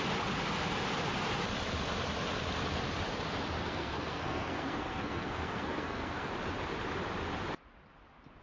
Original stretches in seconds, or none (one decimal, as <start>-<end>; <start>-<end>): 0.0-3.6; 6.3-8.4